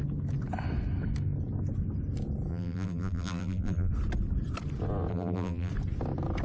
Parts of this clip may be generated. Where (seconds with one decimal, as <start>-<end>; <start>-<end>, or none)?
2.5-3.9; 5.1-5.7